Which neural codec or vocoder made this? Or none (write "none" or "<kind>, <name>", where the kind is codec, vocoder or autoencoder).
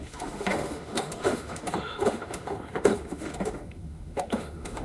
autoencoder, DAC-VAE